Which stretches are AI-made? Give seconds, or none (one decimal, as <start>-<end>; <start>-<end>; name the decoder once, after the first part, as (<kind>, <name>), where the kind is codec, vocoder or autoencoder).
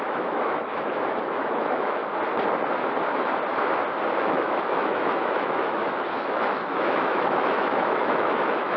0.0-2.0 (autoencoder, DAC-VAE); 4.2-8.8